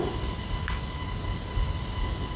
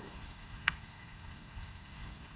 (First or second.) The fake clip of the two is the second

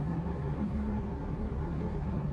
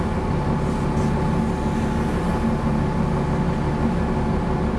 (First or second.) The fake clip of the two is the first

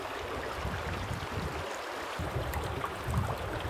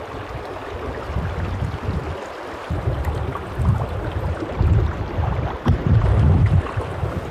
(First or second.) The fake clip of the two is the first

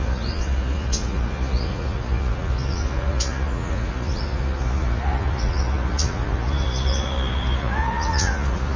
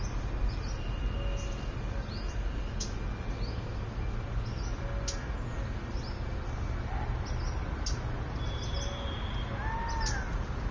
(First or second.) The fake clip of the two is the first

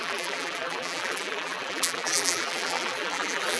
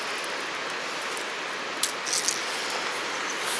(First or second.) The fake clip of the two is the first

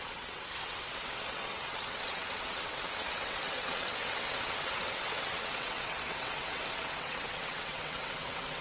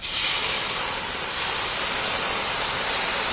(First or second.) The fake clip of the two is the first